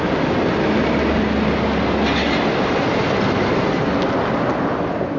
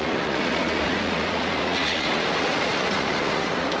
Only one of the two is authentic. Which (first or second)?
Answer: first